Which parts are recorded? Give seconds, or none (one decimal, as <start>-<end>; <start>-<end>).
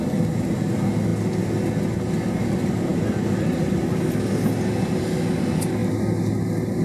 0.0-6.8